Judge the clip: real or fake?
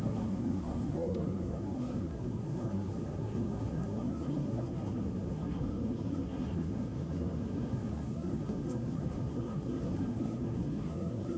fake